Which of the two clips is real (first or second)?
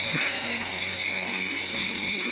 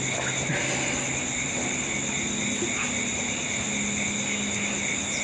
second